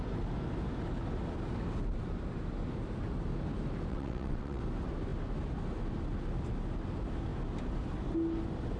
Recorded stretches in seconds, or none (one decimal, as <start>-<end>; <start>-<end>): 0.0-3.9; 4.6-8.8